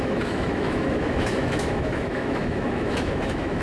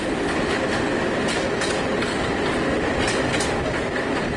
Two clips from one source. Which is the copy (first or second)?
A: first